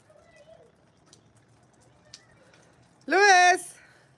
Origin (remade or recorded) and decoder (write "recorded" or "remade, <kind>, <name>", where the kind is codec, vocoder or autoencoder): recorded